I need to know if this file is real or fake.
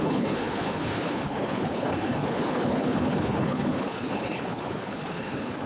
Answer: fake